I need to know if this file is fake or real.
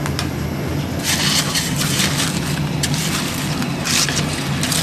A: real